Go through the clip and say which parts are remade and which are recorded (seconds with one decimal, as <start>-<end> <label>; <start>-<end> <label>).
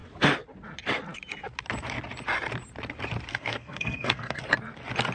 0.0-3.3 recorded; 3.3-4.4 remade; 4.4-5.1 recorded